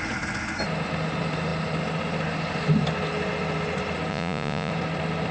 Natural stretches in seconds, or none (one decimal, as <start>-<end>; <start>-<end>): 0.0-4.1; 4.7-5.3